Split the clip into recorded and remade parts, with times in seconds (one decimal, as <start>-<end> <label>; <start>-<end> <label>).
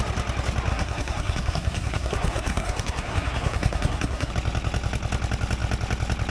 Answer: 0.0-0.7 recorded; 0.7-4.3 remade; 4.3-6.3 recorded